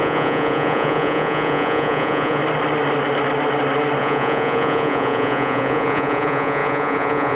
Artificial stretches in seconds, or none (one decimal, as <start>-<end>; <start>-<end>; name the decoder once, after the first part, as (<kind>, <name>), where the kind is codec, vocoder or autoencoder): 0.0-2.4 (vocoder, Vocos); 4.0-7.3